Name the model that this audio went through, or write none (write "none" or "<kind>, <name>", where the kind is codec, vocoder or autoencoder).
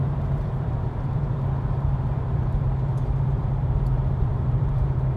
vocoder, BigVGAN v2